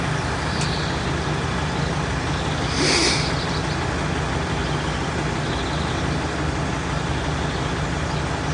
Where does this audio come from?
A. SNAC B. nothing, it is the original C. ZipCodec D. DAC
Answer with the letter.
B